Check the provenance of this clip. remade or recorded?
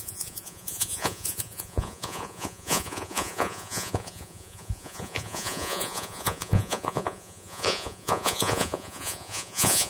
remade